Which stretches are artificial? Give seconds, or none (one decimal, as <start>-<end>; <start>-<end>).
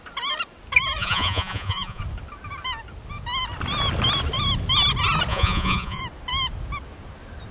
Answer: 1.0-2.0; 5.3-6.0